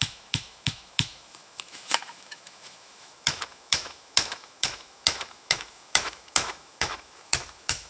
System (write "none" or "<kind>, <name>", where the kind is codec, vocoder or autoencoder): autoencoder, DAC-VAE